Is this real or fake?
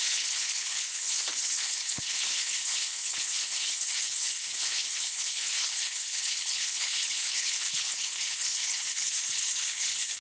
fake